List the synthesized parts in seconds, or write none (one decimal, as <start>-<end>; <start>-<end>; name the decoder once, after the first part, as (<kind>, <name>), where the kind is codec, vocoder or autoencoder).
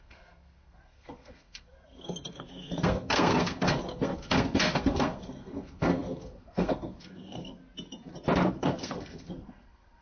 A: 0.0-7.6 (codec, SNAC); 8.5-10.0